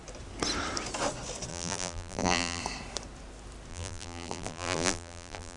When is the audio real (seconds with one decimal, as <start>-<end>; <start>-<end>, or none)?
0.0-1.5; 2.6-3.7